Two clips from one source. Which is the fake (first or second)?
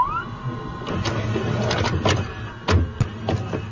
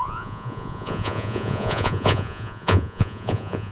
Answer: second